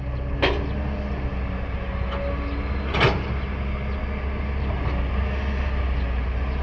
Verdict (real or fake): real